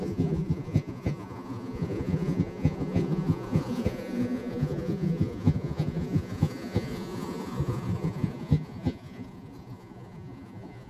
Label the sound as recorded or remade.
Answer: remade